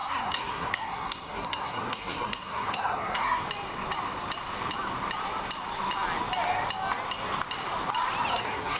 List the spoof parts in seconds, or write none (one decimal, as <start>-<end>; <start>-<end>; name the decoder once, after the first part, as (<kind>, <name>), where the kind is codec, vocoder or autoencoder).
0.0-3.4 (codec, SNAC); 8.3-8.8